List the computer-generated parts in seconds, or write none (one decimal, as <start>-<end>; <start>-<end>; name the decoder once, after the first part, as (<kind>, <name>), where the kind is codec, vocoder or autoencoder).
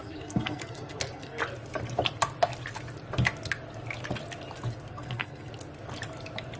0.0-1.4 (codec, SNAC); 4.9-5.5